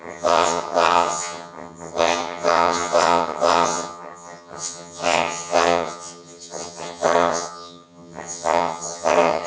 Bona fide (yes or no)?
no